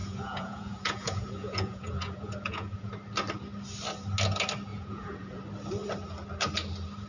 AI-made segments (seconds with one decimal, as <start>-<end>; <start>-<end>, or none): 0.0-2.9; 4.7-5.4